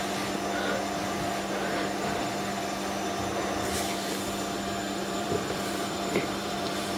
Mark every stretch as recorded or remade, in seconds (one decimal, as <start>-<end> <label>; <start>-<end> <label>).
0.0-5.0 recorded; 5.0-7.0 remade